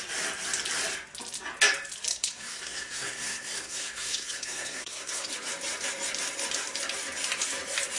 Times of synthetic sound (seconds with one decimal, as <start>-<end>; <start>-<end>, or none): 2.1-5.3